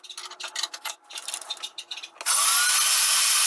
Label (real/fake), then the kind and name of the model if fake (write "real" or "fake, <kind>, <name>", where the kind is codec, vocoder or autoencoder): real